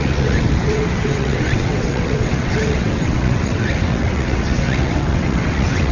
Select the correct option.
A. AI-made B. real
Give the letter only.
A